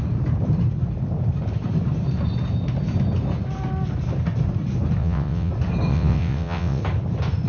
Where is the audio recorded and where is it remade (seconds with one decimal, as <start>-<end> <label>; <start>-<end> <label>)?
0.0-5.0 recorded; 5.0-5.5 remade; 5.5-5.9 recorded; 5.9-6.8 remade; 6.8-7.5 recorded